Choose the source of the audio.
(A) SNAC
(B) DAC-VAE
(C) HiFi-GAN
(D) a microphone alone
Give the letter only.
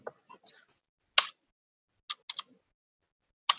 D